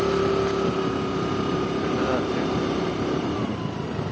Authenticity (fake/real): real